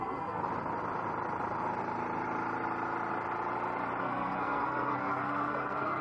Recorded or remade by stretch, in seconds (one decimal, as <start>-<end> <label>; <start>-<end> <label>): 0.0-0.4 remade; 0.4-4.0 recorded; 4.0-6.0 remade